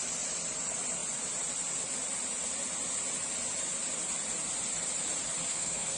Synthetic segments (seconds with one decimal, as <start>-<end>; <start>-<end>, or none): 5.5-6.0